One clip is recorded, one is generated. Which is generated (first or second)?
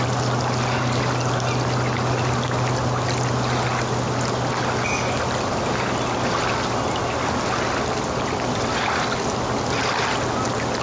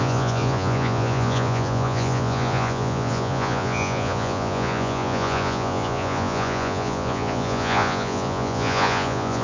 second